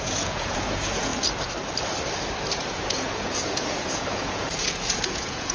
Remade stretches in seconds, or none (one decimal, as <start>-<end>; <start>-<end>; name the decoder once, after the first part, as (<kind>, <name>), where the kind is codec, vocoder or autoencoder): 0.0-1.1 (vocoder, Vocos); 2.7-5.5